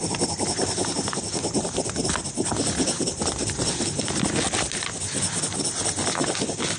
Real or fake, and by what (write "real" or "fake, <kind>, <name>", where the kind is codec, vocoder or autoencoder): real